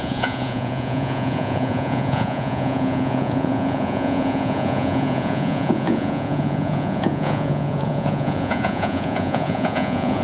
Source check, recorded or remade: remade